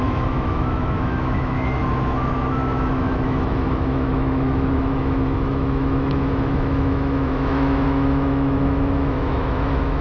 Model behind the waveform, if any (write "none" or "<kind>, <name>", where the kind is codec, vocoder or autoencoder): autoencoder, DAC-VAE